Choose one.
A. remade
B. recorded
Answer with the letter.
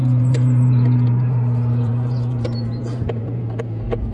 A